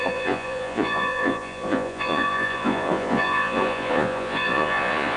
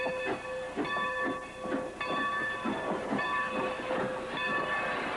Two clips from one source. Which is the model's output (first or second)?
first